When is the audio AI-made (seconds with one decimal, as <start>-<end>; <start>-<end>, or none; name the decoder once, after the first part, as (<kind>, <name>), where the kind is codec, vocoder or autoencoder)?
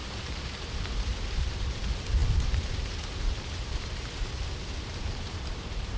0.0-6.0 (vocoder, BigVGAN v2)